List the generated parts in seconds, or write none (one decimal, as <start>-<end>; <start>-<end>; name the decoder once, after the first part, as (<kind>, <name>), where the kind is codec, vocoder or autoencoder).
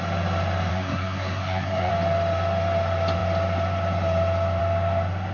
0.7-1.9 (codec, SNAC)